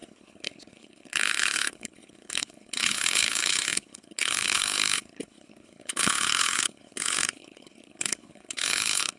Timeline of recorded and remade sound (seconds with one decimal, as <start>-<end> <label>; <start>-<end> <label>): 0.0-9.2 remade